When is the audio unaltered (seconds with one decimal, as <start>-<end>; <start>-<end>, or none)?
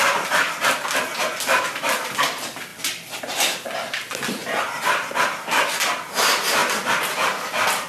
0.0-4.4; 5.0-7.9